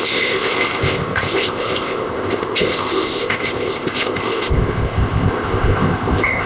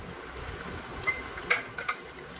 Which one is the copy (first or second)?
first